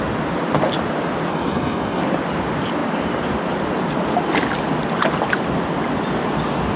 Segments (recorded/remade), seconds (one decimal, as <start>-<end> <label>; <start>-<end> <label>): 0.0-1.3 recorded; 1.3-2.0 remade; 2.0-6.8 recorded